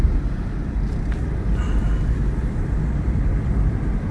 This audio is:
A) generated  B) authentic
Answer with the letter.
B